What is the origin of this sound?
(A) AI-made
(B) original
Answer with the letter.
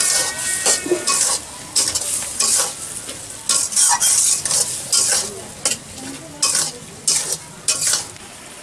B